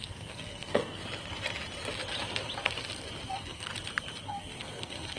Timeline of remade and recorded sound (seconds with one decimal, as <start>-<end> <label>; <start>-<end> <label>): 0.0-1.0 remade; 1.0-3.3 recorded; 3.3-3.7 remade; 3.7-4.2 recorded; 4.2-5.2 remade